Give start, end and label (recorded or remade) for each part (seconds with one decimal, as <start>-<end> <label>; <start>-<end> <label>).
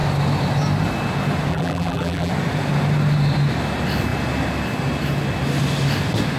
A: 0.0-1.5 recorded; 1.5-2.3 remade; 2.3-6.4 recorded